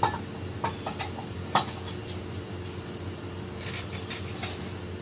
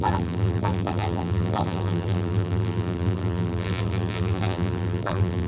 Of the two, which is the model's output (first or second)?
second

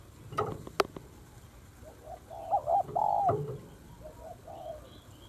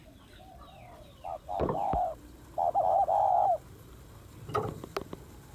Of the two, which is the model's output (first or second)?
second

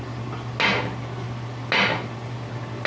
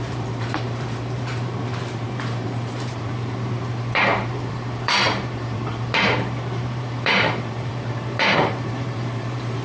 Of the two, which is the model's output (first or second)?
second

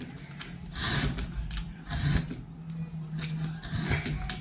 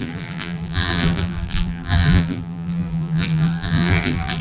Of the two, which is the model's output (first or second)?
second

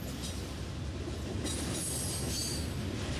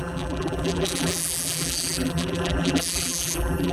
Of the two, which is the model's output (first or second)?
second